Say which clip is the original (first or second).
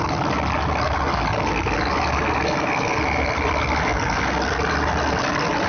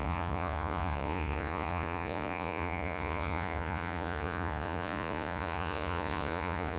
first